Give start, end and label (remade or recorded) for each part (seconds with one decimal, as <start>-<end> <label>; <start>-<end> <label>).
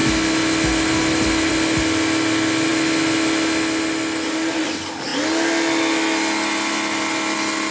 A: 0.0-7.7 recorded